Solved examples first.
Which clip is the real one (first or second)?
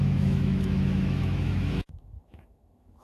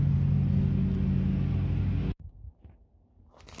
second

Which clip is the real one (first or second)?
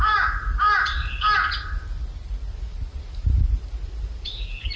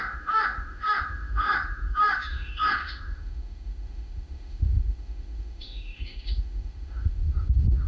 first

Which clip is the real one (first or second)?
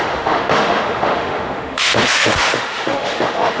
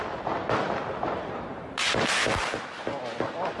second